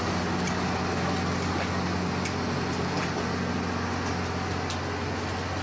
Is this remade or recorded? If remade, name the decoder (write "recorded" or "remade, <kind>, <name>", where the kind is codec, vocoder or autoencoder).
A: recorded